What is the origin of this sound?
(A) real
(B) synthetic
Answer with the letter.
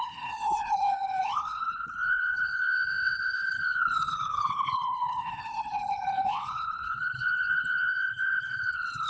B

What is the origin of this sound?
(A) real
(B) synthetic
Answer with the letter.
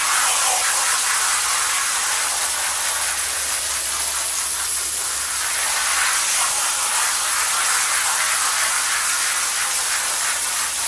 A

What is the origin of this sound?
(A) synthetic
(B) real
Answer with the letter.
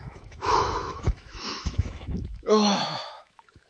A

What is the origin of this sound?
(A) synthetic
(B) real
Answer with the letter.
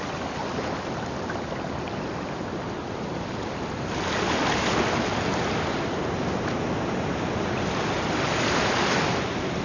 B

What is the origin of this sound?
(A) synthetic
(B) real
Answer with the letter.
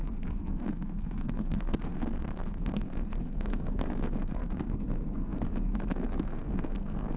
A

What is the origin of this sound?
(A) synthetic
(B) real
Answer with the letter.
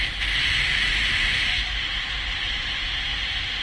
B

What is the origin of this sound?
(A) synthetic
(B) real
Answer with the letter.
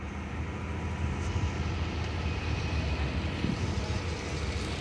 B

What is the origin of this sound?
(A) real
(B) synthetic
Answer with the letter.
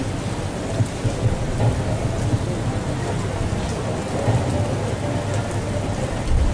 A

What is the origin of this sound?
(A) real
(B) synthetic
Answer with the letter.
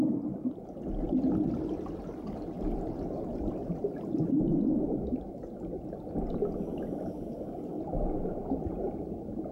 A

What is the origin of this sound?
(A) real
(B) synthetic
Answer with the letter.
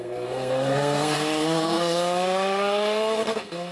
B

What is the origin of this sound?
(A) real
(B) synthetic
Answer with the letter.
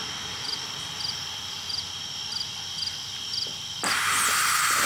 A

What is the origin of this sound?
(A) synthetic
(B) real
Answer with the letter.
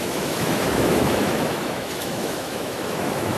A